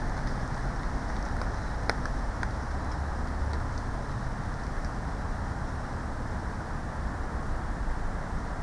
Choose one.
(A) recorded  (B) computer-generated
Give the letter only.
A